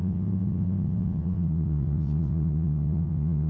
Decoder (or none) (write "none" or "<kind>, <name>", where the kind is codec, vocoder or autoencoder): vocoder, WaveNeXt